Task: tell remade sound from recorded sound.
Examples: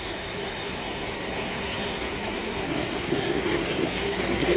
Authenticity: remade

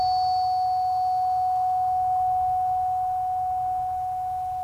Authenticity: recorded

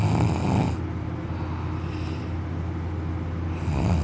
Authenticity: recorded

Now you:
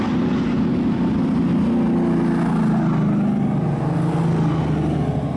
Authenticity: recorded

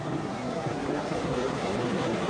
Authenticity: remade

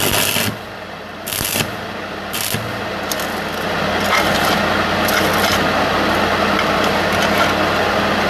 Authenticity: recorded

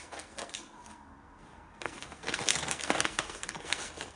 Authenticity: remade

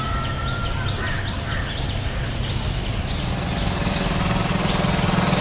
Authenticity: recorded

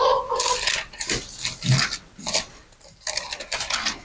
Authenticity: recorded